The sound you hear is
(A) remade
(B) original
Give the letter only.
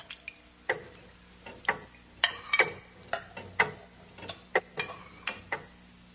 B